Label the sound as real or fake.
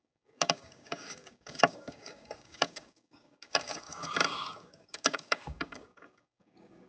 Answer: fake